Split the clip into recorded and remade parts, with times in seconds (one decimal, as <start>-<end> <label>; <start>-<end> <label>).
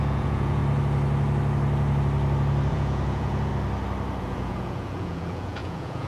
0.0-0.6 remade; 0.6-2.7 recorded; 2.7-3.5 remade; 3.5-4.2 recorded; 4.2-6.1 remade